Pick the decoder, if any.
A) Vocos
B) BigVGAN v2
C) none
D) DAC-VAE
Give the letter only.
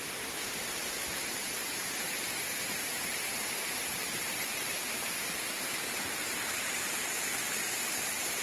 B